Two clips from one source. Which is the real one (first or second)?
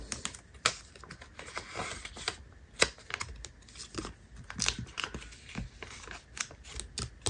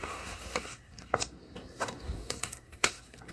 first